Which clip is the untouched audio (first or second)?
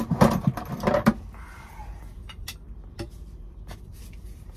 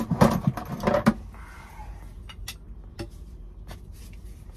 second